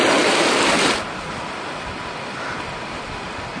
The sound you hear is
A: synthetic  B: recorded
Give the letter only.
B